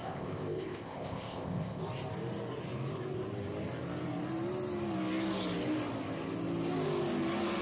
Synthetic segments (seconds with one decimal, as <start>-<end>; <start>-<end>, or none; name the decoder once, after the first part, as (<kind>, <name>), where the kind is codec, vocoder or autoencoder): 0.0-1.8 (codec, ZipCodec)

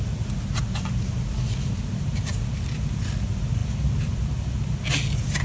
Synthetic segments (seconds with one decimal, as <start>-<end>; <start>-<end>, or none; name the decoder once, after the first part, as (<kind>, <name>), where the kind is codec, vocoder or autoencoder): none

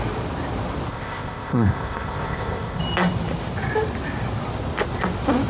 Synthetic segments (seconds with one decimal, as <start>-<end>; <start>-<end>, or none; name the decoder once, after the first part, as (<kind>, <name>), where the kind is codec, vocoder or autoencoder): 0.9-2.8 (codec, ZipCodec)

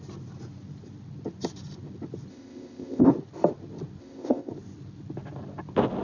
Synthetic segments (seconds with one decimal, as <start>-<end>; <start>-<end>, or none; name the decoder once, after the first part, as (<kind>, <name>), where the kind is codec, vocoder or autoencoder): 2.3-3.1 (codec, ZipCodec); 4.0-4.5

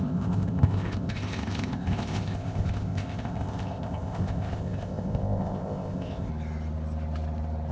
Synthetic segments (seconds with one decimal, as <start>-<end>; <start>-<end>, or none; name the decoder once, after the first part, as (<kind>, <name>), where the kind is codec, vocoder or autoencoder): 0.0-6.3 (codec, ZipCodec)